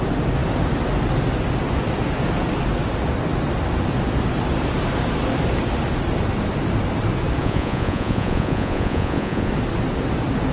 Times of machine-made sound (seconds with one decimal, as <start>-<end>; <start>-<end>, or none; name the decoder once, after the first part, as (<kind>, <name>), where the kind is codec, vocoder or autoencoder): 7.4-9.5 (vocoder, Vocos)